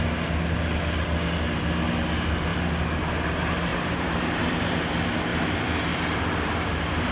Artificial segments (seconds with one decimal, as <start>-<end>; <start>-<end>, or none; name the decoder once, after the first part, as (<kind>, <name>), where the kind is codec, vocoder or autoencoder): 3.7-4.8 (vocoder, BigVGAN v2); 5.3-7.1